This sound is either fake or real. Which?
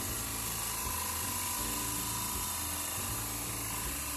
real